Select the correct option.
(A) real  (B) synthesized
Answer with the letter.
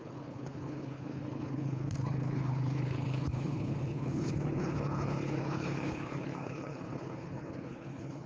B